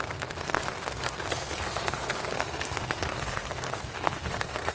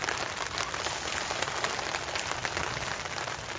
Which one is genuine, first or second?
second